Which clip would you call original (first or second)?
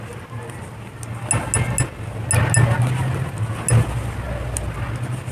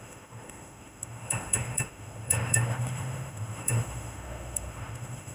first